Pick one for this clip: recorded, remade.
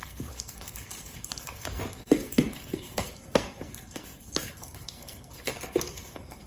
remade